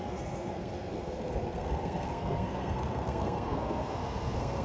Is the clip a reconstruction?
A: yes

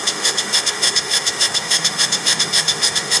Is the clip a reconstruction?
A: yes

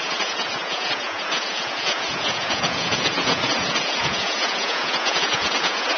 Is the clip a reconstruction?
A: yes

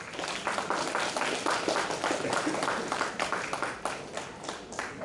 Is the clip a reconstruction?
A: no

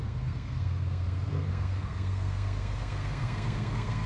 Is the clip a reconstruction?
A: yes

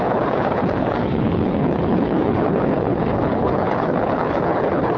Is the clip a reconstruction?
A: yes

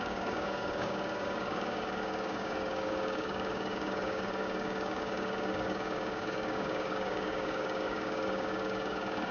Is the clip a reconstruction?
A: yes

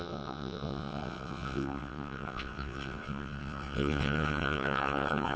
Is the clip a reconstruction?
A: yes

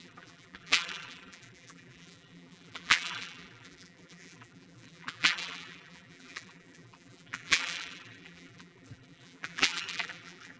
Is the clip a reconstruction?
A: yes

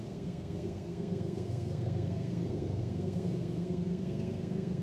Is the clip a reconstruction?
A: yes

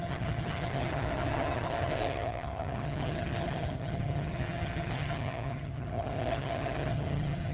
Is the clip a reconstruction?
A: yes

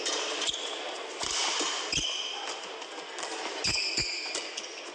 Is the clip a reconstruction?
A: no